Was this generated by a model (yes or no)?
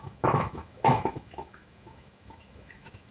yes